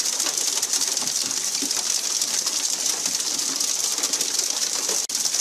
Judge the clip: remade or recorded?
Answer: recorded